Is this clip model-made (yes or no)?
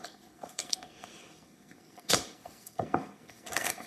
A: yes